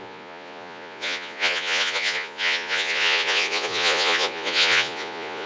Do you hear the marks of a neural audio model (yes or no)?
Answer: yes